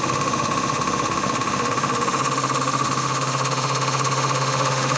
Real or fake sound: fake